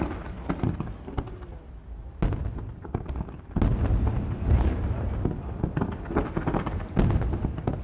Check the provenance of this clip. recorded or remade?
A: recorded